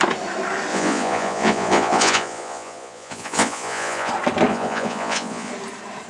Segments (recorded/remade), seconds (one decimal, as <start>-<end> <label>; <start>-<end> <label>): 0.0-0.7 recorded; 0.7-4.1 remade; 4.1-4.5 recorded; 4.5-5.5 remade; 5.5-6.1 recorded